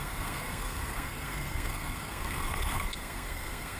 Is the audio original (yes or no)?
no